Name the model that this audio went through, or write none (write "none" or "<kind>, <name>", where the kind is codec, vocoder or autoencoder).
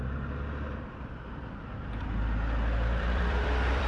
vocoder, BigVGAN v2